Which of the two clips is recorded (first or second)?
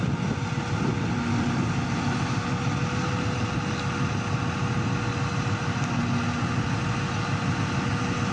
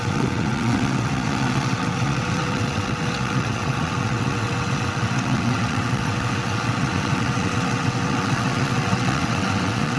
first